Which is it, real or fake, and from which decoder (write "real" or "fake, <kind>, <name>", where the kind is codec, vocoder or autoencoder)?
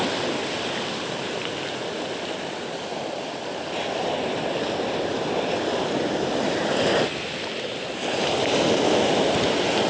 real